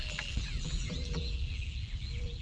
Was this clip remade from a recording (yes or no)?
yes